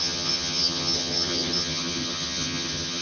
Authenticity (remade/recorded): remade